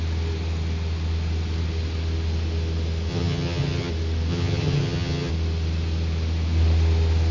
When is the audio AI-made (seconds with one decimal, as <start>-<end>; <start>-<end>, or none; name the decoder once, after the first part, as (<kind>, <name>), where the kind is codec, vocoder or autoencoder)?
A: 3.1-3.9 (vocoder, HiFi-GAN); 4.3-5.3